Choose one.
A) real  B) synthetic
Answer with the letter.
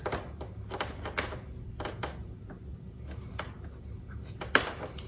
A